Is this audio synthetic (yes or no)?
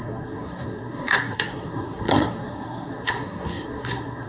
yes